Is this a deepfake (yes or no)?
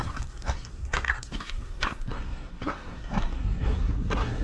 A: yes